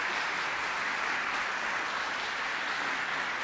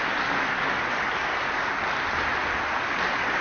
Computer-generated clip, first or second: first